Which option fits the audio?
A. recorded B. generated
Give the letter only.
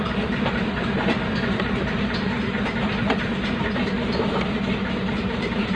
B